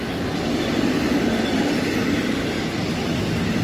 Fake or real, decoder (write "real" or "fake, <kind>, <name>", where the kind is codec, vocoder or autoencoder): real